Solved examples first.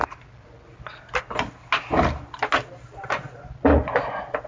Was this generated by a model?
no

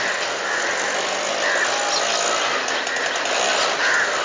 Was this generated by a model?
no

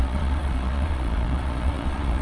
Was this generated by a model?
yes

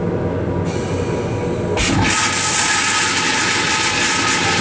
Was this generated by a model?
no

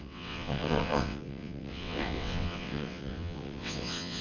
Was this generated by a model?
yes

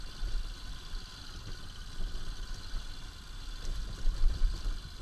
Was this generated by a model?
no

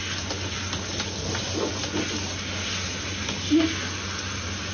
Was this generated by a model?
no